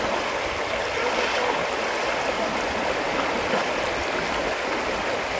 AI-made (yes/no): no